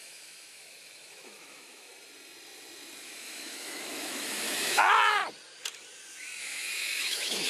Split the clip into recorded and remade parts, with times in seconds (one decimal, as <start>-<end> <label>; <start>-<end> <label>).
0.0-1.9 remade; 1.9-3.0 recorded; 3.0-5.2 remade; 5.2-6.4 recorded; 6.4-7.5 remade